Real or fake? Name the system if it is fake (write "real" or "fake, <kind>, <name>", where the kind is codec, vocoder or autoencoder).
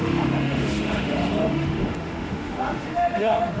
fake, autoencoder, DAC-VAE